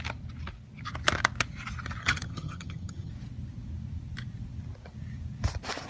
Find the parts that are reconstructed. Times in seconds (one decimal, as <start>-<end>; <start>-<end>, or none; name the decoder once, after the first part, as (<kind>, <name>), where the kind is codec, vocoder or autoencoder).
2.0-3.1 (vocoder, HiFi-GAN)